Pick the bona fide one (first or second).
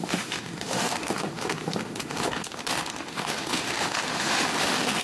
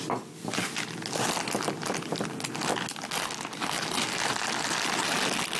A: second